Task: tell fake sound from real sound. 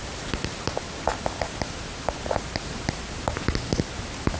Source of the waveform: real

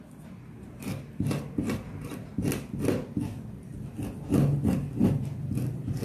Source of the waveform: real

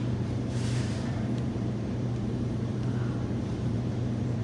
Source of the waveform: fake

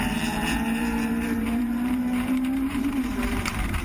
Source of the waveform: fake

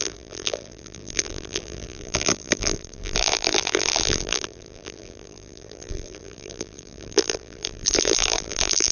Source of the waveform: fake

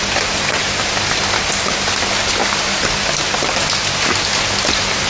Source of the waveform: real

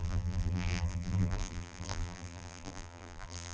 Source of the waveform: fake